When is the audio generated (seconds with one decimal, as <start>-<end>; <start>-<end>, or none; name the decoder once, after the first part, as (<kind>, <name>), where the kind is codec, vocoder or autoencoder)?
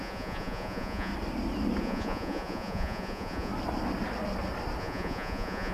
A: 0.0-1.1 (vocoder, Vocos); 1.8-3.5; 4.8-5.7